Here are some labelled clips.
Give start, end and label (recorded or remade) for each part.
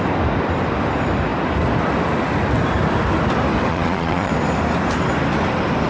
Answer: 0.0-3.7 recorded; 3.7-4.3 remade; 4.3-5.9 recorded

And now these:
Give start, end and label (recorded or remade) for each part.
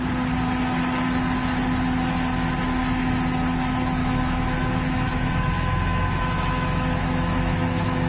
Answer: 0.0-4.0 recorded; 4.0-8.1 remade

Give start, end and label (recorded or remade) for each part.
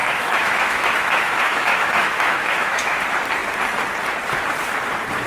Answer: 0.0-3.0 remade; 3.0-5.3 recorded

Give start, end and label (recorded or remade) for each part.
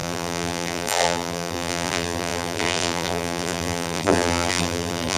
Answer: 0.0-5.2 remade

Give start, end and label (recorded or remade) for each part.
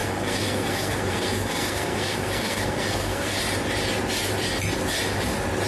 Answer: 0.0-3.4 remade; 3.4-5.7 recorded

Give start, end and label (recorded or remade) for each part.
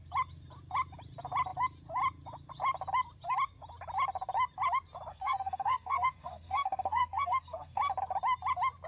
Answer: 0.0-5.1 recorded; 5.1-7.8 remade; 7.8-8.9 recorded